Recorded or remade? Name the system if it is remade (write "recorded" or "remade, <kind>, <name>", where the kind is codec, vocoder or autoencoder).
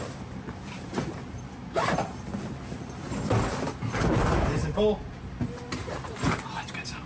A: remade, vocoder, BigVGAN v2